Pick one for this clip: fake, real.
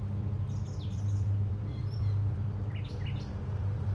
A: fake